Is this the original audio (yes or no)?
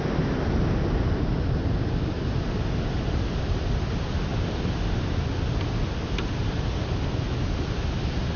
yes